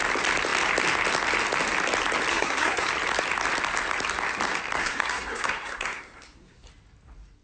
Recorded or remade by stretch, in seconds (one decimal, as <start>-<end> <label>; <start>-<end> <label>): 0.0-2.3 recorded; 2.3-2.9 remade; 2.9-4.8 recorded; 4.8-6.7 remade; 6.7-7.4 recorded